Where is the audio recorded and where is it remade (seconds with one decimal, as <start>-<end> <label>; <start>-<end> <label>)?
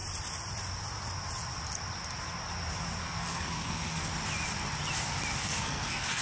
0.0-3.0 recorded; 3.0-4.1 remade; 4.1-5.3 recorded; 5.3-6.2 remade